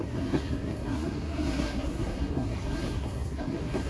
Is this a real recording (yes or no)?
no